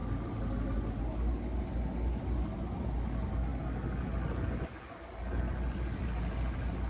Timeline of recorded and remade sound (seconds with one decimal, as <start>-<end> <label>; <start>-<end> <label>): 0.0-6.9 recorded